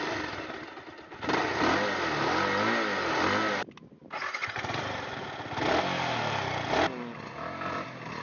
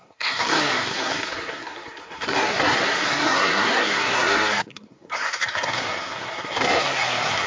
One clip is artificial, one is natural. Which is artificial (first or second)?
second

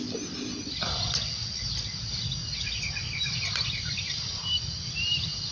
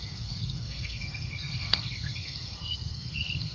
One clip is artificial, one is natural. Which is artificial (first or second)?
second